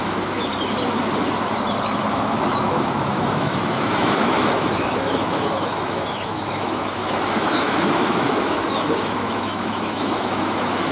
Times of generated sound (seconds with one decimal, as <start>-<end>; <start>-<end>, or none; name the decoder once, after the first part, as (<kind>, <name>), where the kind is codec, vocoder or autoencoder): 0.0-0.5 (autoencoder, DAC-VAE); 2.1-10.9